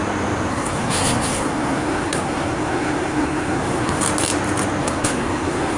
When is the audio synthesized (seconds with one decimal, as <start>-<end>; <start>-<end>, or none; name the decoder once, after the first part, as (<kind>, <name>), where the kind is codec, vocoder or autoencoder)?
0.5-4.0 (codec, SNAC); 4.8-5.8

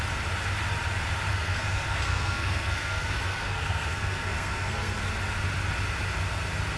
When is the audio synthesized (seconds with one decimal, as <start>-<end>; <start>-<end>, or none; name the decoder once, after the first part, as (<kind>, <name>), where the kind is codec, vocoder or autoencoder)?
1.3-5.1 (codec, SNAC)

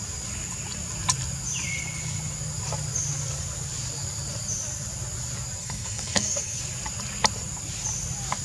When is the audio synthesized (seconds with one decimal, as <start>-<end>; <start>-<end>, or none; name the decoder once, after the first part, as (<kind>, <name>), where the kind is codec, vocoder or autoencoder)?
5.6-6.6 (codec, SNAC)

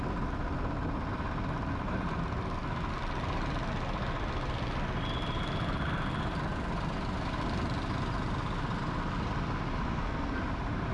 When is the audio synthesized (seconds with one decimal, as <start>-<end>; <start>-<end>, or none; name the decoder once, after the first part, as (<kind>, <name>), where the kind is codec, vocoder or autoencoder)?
9.8-10.4 (codec, SNAC)

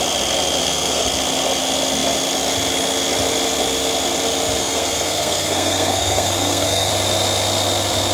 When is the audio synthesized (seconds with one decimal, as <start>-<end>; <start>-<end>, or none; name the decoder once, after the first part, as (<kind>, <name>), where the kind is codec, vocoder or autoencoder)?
0.6-1.1 (codec, SNAC); 4.6-6.9

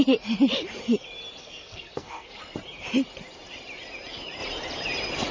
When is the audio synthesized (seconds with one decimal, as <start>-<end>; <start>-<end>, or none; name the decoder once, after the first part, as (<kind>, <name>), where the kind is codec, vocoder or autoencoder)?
1.4-2.4 (codec, SNAC)